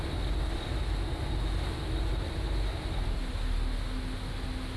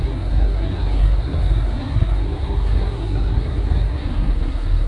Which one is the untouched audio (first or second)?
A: first